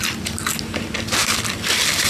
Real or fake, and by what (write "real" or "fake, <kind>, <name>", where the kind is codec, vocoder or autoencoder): real